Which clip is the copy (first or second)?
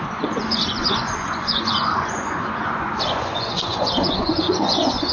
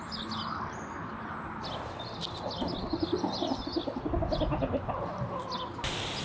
first